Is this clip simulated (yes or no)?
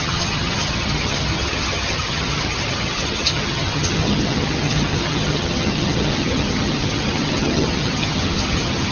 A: yes